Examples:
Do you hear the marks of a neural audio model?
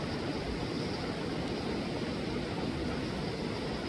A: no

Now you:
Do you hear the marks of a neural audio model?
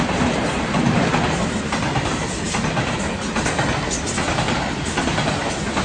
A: no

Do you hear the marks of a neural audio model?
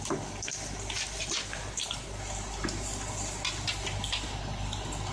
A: no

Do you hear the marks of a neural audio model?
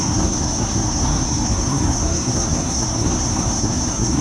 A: yes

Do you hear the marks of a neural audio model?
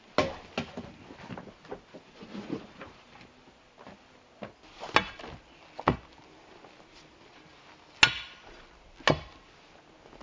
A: no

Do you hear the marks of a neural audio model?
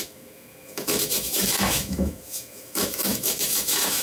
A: yes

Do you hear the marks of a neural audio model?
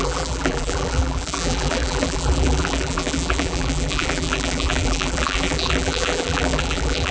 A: yes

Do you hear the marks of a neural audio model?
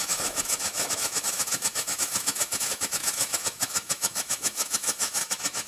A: yes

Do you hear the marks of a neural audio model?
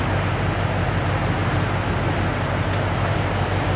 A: no